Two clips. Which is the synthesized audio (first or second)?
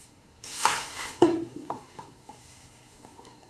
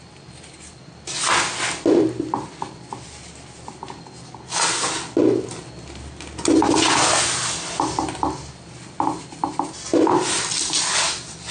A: first